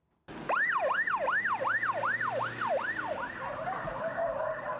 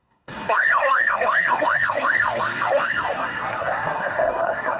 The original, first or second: first